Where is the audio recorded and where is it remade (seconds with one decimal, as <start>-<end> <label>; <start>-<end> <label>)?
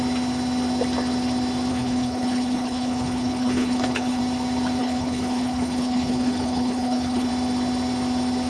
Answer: 0.0-1.7 recorded; 1.7-4.2 remade; 4.2-4.8 recorded; 4.8-7.3 remade; 7.3-8.5 recorded